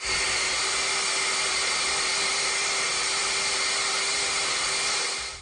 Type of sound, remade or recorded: recorded